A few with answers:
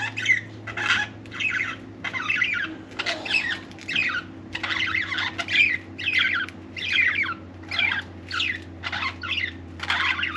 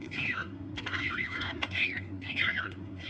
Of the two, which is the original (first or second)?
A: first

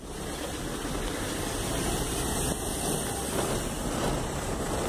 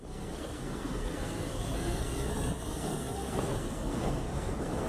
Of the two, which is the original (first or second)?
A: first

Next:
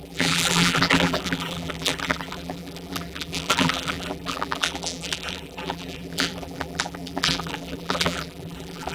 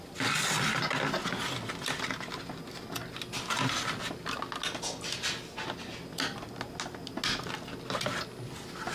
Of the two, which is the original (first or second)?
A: second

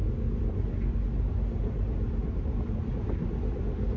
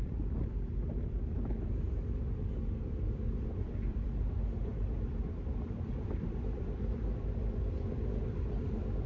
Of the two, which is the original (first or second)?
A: first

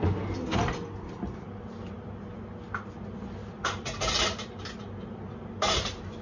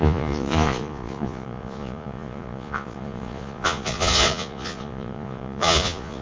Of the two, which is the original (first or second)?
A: first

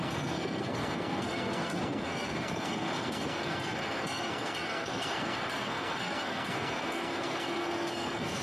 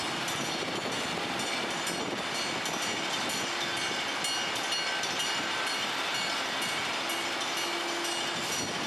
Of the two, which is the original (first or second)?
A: second